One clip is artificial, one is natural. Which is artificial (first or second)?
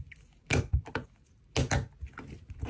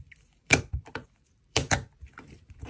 second